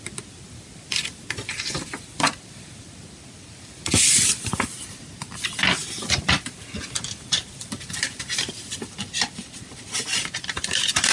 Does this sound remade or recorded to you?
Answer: remade